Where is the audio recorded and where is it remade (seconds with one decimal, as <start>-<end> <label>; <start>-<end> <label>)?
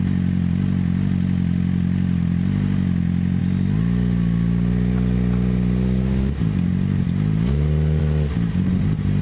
0.0-9.2 recorded